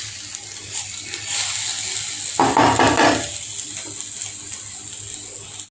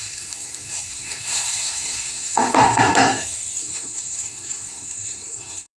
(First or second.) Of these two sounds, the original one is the first